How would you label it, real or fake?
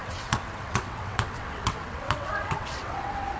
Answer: fake